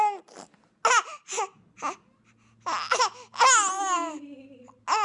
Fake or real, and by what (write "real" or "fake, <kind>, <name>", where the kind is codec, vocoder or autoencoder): real